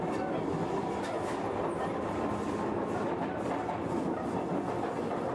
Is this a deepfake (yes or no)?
no